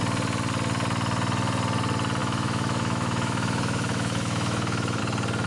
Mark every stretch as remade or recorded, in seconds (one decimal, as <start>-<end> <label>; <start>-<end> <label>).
0.0-2.2 recorded; 2.2-5.0 remade; 5.0-5.5 recorded